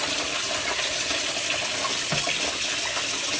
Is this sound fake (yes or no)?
no